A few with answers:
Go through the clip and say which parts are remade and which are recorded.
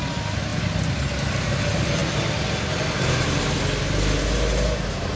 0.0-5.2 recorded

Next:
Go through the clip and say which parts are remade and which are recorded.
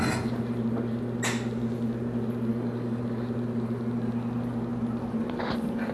0.0-2.5 recorded; 2.5-3.0 remade; 3.0-5.9 recorded